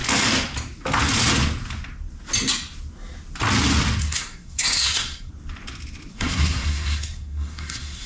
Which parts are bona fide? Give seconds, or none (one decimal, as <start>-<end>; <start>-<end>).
0.0-4.0; 5.3-6.1